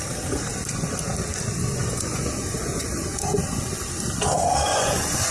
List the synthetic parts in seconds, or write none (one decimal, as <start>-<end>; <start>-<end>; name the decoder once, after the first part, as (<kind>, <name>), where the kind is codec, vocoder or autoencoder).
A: 1.6-3.2 (vocoder, Vocos); 4.7-5.3